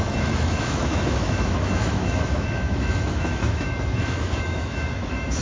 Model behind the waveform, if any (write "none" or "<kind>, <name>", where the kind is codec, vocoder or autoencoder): autoencoder, DAC-VAE